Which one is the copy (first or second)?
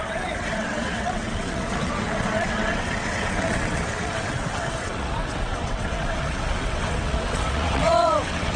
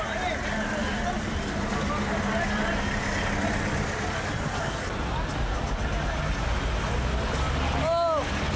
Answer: first